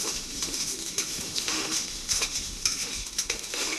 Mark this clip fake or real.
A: fake